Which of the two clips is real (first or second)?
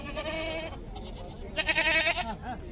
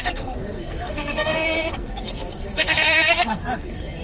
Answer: first